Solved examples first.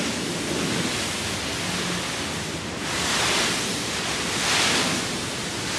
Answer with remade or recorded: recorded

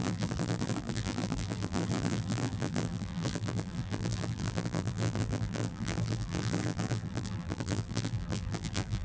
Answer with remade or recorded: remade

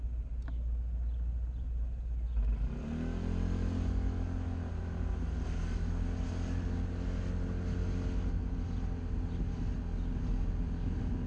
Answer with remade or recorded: recorded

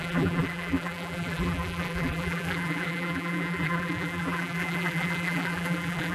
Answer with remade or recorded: remade